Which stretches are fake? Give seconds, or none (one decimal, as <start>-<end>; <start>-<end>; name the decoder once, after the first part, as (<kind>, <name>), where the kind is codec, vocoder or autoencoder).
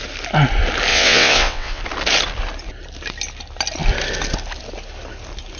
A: 0.9-1.8 (vocoder, WaveNeXt)